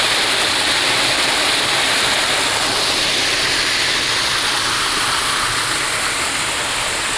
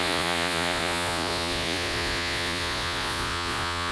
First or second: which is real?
first